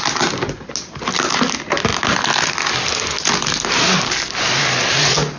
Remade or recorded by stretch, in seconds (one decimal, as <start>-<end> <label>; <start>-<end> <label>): 0.0-5.4 recorded